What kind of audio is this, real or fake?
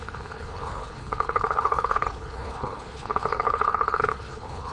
fake